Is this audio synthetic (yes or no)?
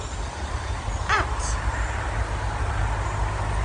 no